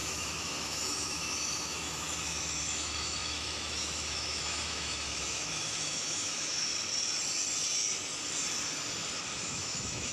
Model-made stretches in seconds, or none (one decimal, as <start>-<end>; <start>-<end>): 0.0-6.7; 9.4-10.1